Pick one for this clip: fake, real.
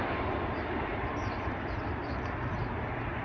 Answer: fake